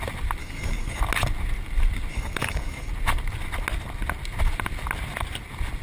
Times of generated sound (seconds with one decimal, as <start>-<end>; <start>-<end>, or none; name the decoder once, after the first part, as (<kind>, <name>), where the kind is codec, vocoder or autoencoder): 0.4-1.0 (codec, DAC); 2.1-2.9